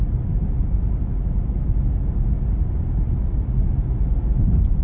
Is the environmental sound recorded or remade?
recorded